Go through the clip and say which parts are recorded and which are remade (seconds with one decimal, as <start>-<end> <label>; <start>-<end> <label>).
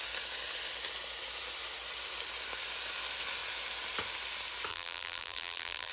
0.0-4.7 recorded; 4.7-5.9 remade